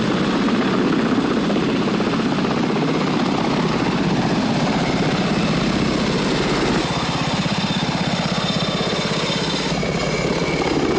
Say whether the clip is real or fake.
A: real